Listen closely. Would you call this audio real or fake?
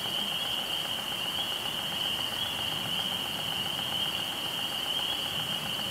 real